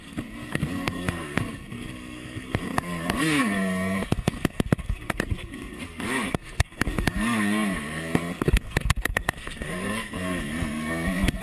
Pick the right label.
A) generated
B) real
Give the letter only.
A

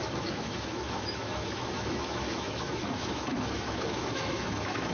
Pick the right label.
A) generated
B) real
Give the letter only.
A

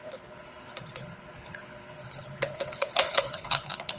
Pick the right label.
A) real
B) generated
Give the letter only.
B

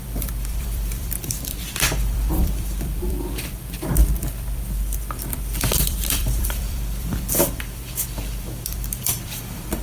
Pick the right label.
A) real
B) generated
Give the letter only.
B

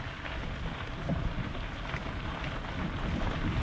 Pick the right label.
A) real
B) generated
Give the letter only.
A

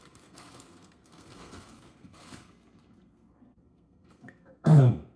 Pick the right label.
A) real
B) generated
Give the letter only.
B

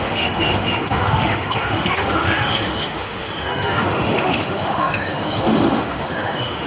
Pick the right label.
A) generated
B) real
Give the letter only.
A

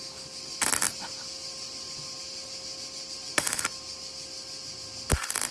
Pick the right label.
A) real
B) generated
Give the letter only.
A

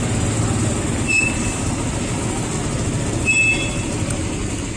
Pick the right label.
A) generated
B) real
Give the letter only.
B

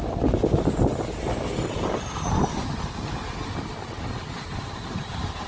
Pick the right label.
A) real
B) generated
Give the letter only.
A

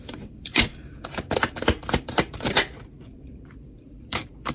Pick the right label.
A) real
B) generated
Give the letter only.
B